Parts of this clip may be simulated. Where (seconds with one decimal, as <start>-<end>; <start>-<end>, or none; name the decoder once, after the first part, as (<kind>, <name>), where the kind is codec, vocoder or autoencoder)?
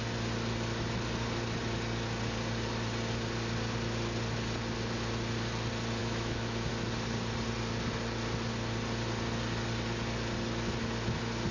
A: 6.0-6.7 (autoencoder, DAC-VAE)